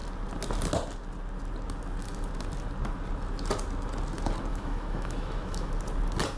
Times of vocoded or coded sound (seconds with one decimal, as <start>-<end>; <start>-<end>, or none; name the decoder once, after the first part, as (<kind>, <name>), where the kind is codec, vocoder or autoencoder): 4.5-5.7 (autoencoder, DAC-VAE)